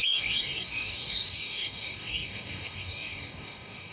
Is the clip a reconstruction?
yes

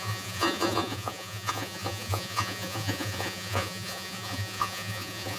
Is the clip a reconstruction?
yes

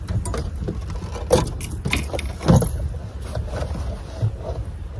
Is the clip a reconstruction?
no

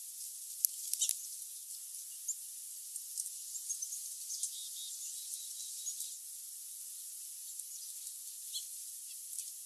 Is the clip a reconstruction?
no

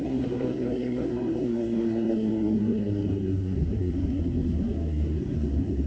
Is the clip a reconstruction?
yes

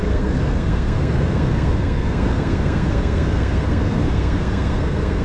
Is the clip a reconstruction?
yes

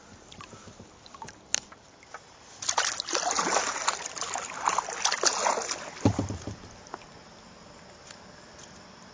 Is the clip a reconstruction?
no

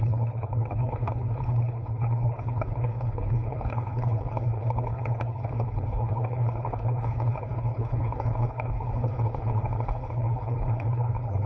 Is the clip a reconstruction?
yes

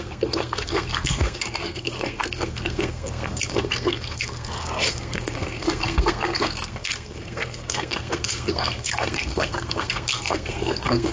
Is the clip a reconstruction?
yes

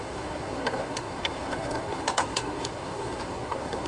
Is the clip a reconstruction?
yes